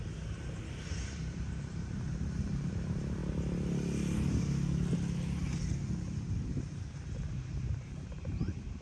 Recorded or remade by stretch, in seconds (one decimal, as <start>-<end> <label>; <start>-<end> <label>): 0.0-3.2 remade; 3.2-6.6 recorded; 6.6-8.8 remade